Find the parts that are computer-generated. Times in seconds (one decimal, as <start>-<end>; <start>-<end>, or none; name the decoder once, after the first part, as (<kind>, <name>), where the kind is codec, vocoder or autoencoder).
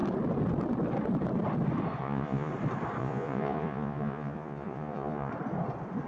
2.0-2.5 (vocoder, Vocos); 3.0-5.3